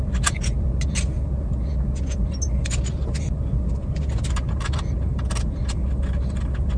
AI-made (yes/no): no